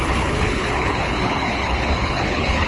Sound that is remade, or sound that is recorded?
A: remade